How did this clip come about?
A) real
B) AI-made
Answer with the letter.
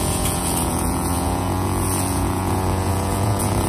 B